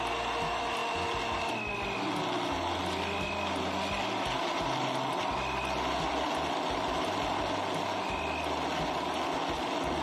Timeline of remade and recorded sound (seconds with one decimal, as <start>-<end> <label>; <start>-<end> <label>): 0.0-10.0 recorded